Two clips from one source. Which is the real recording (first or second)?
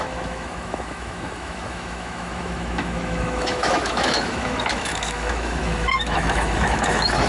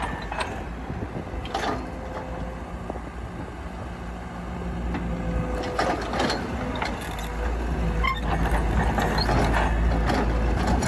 second